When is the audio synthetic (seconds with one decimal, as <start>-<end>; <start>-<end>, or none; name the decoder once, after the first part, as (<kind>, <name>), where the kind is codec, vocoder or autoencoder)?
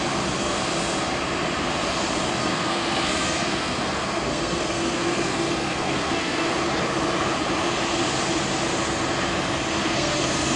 2.4-6.5 (codec, SNAC); 9.8-10.6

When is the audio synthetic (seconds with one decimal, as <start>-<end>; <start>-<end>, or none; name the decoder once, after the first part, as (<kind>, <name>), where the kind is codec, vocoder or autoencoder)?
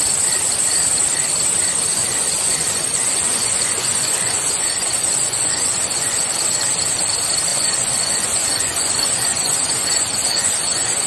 1.9-6.3 (vocoder, Vocos); 7.5-11.1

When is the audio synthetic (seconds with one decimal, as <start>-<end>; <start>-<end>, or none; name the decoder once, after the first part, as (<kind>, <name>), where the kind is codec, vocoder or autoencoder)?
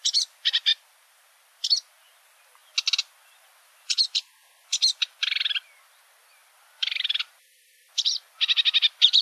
0.7-1.7 (vocoder, BigVGAN v2); 4.4-5.9; 6.4-9.2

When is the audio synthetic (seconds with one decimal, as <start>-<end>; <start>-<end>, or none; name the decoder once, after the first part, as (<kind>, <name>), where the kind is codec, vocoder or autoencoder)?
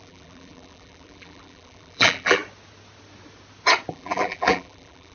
0.0-2.4 (vocoder, BigVGAN v2); 3.9-5.1